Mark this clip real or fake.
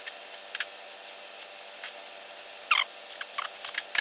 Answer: real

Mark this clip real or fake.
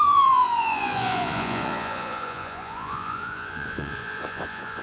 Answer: fake